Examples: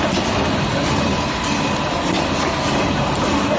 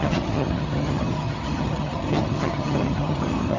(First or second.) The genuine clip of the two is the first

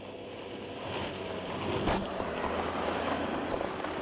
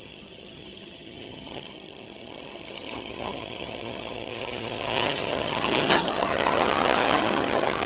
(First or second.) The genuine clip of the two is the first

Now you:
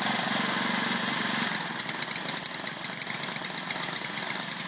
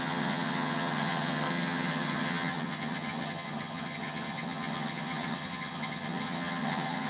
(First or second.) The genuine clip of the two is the first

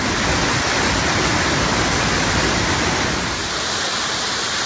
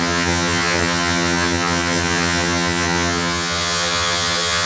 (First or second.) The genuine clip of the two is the first